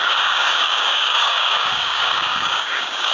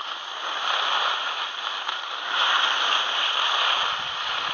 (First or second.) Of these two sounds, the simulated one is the first